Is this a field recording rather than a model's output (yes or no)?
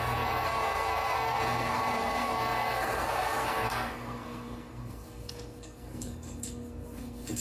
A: no